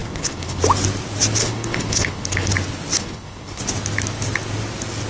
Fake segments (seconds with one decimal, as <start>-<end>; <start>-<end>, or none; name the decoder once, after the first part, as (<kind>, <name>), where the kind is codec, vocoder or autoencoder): 0.0-0.6 (codec, HILCodec); 1.4-2.5; 3.0-3.6

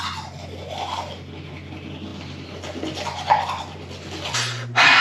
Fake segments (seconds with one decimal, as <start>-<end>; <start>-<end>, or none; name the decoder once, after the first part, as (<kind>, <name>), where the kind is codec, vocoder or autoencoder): none

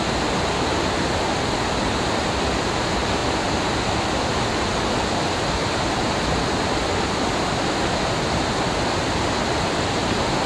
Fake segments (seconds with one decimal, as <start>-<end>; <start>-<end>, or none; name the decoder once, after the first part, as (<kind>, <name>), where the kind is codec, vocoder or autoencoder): none